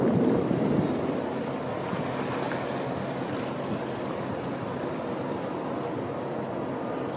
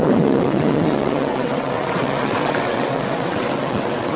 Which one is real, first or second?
first